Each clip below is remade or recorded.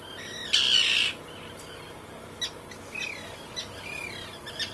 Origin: recorded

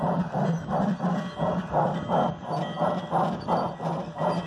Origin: recorded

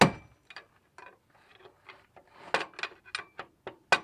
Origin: recorded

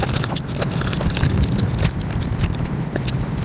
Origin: recorded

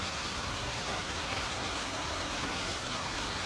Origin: remade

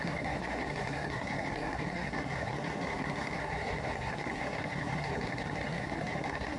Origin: remade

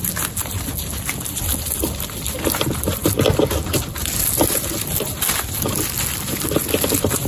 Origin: recorded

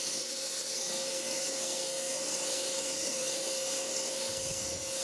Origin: remade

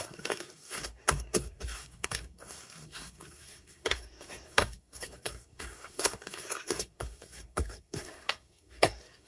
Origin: remade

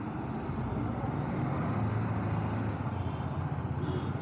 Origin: recorded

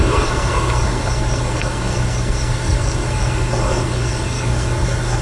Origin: remade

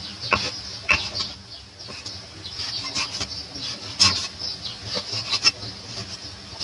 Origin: recorded